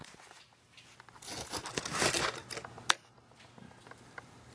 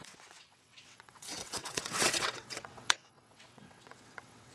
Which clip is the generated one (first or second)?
second